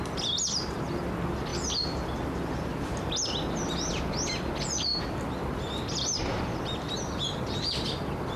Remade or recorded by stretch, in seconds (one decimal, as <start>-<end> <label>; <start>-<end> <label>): 0.0-8.4 recorded